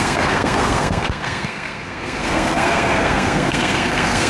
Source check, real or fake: fake